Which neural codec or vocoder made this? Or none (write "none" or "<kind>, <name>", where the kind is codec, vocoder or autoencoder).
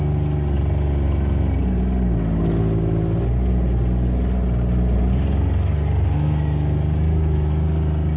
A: none